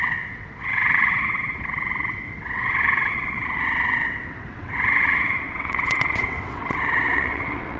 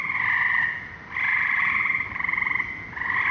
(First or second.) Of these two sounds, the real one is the second